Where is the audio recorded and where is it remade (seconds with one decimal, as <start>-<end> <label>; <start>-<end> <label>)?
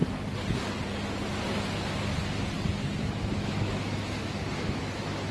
0.0-3.0 recorded; 3.0-5.3 remade